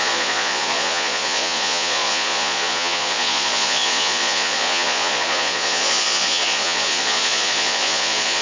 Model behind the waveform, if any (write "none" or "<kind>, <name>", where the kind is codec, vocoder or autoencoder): vocoder, Vocos